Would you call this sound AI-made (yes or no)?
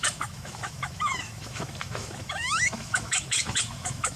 yes